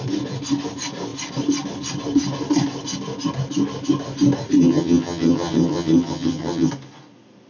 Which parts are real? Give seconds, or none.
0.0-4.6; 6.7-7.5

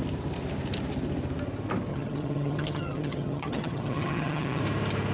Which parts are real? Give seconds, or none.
0.0-1.9; 4.6-5.1